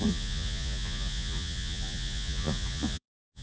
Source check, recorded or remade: remade